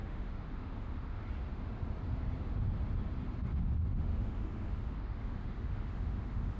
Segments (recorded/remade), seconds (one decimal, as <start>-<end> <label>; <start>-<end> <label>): 0.0-1.2 remade; 1.2-3.9 recorded; 3.9-6.6 remade

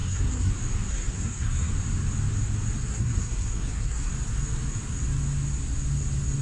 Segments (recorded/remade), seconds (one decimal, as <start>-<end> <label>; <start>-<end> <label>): 0.0-0.5 remade; 0.5-0.9 recorded; 0.9-1.7 remade; 1.7-2.8 recorded; 2.8-4.1 remade; 4.1-6.4 recorded

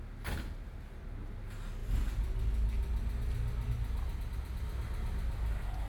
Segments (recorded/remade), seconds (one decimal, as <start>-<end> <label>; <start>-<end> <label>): 0.0-5.9 recorded

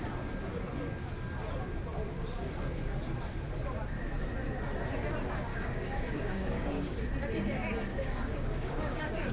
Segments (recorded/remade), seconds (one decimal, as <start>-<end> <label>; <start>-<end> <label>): 0.0-5.5 recorded; 5.5-7.0 remade; 7.0-7.9 recorded; 7.9-9.3 remade

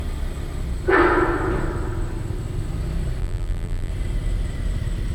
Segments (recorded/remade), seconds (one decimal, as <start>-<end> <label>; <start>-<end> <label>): 0.0-3.2 recorded; 3.2-3.9 remade; 3.9-5.1 recorded

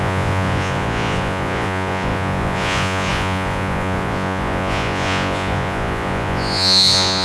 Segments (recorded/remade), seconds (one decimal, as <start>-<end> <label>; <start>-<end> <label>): 0.0-7.2 remade

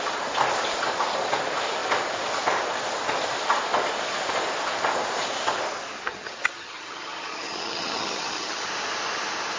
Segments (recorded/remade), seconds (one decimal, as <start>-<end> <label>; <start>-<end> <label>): 0.0-6.1 recorded; 6.1-8.7 remade; 8.7-9.6 recorded